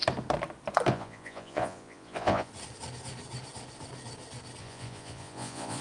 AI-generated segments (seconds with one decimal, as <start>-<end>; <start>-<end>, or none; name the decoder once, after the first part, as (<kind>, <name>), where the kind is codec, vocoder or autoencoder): 0.9-2.5 (vocoder, Vocos); 4.6-5.8